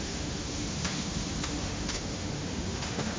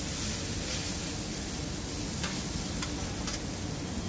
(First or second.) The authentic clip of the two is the second